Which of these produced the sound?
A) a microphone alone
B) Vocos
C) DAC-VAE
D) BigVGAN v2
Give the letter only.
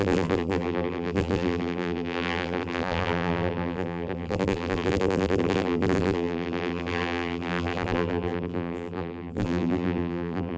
D